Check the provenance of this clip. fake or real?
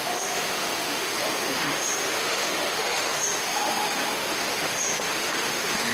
fake